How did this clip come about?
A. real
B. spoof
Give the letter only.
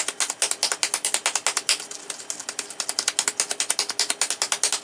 A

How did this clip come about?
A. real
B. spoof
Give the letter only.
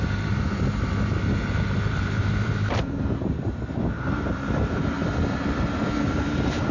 B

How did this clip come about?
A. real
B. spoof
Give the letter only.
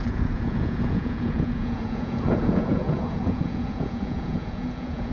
B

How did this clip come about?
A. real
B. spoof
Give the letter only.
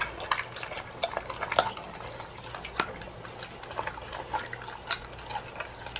A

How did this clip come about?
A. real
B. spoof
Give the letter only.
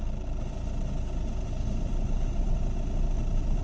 A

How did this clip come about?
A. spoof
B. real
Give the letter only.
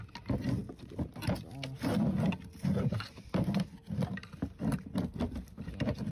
B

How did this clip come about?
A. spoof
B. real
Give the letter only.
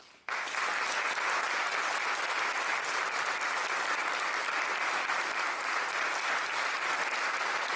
B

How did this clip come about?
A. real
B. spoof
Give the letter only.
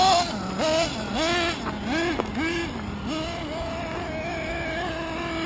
A